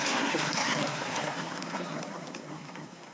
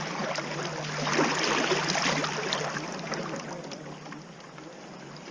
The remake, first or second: first